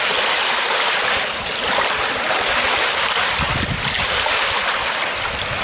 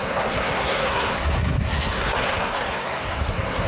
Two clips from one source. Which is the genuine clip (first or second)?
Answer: first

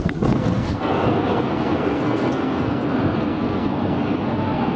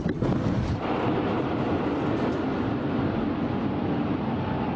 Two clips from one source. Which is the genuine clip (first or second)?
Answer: second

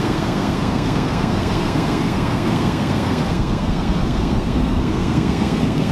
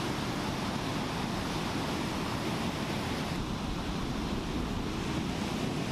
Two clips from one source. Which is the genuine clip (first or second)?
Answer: second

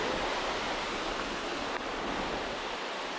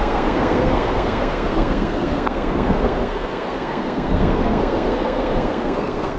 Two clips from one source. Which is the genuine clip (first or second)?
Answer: first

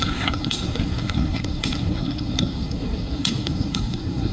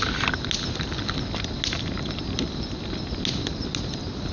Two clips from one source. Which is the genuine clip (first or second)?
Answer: second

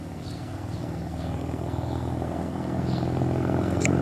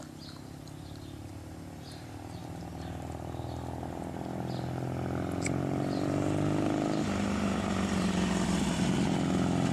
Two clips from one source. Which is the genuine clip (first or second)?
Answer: second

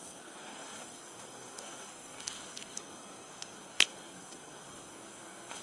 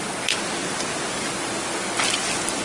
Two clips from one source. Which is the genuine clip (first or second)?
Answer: second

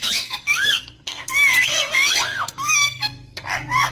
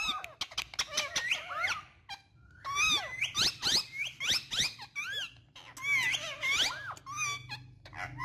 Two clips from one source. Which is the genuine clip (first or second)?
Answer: second